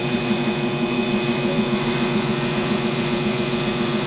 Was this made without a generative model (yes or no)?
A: no